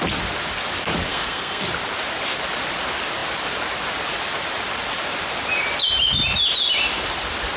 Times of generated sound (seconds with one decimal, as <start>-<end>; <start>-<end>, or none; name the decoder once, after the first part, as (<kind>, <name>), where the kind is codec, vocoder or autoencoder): 1.1-1.6 (codec, SNAC)

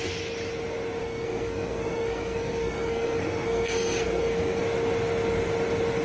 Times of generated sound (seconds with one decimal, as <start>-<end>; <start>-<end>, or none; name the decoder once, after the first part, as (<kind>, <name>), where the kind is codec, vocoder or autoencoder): 1.0-4.6 (codec, SNAC)

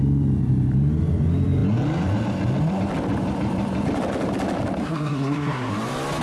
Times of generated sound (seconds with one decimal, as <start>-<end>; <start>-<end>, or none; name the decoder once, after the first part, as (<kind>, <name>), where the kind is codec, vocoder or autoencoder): 4.8-5.7 (codec, SNAC)